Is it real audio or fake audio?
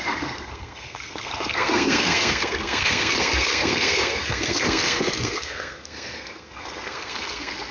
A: fake